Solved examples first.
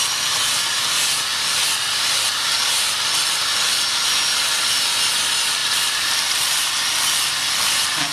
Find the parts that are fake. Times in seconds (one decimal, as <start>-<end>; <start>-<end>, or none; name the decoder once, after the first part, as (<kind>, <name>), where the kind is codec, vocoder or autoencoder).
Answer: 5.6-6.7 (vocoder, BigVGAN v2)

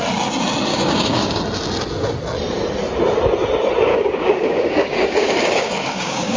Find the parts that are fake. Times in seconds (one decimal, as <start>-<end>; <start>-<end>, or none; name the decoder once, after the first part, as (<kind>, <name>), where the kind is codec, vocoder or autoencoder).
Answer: 0.7-1.4 (codec, DAC); 3.9-6.4

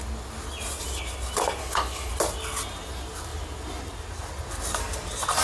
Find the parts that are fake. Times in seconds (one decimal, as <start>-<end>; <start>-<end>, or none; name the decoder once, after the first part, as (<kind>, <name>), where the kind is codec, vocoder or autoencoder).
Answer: 1.6-2.1 (codec, HILCodec)

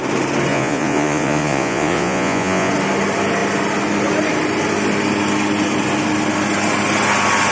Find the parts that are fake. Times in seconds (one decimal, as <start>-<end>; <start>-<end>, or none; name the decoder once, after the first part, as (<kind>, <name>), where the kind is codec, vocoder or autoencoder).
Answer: 0.5-2.7 (vocoder, Vocos)

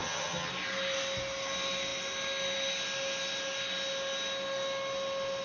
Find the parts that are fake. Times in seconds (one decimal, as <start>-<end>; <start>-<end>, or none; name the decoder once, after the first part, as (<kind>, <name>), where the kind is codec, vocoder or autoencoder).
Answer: 0.0-0.5 (vocoder, HiFi-GAN)